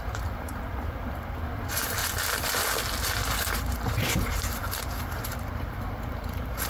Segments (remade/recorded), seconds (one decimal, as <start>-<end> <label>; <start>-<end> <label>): 0.0-2.0 remade; 2.0-3.5 recorded; 3.5-6.7 remade